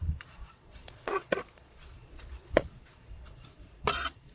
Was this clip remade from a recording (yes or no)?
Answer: yes